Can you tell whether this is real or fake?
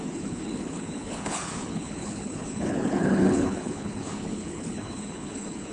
fake